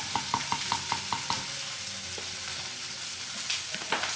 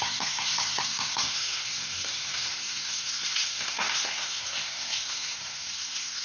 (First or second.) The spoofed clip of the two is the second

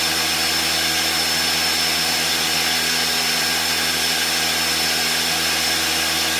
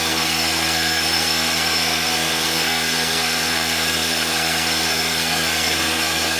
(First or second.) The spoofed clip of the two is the second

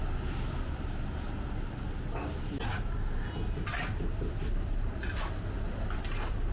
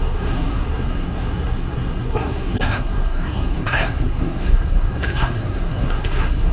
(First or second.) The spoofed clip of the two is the second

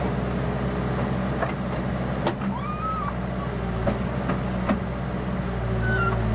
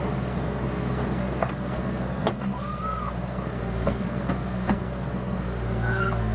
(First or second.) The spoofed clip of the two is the second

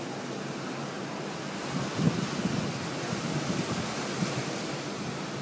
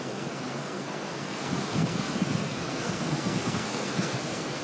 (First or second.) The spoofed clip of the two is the second